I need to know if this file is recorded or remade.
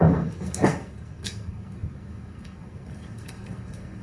remade